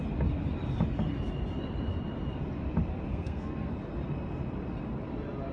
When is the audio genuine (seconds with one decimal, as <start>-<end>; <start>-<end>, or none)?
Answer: 0.0-3.1; 3.7-5.5